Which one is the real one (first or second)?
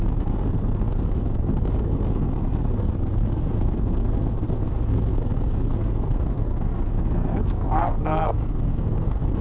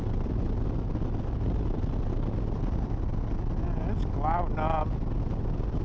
second